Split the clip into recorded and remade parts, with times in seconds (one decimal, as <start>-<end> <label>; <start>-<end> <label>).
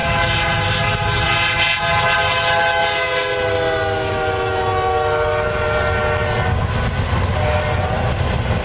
0.0-8.6 recorded